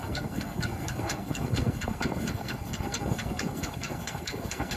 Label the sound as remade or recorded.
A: remade